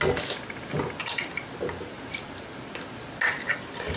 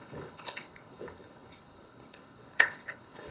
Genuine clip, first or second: first